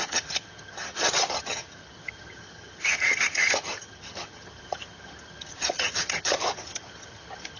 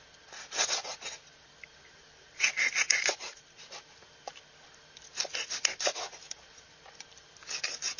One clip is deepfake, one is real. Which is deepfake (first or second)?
first